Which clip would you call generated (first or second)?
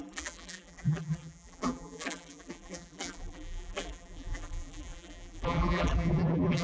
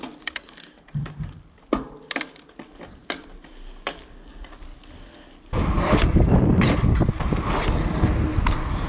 first